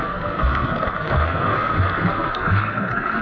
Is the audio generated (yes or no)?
yes